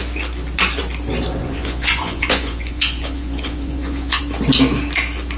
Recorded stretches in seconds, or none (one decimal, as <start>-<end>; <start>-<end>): 0.0-1.4; 4.2-5.4